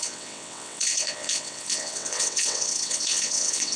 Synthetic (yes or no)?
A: yes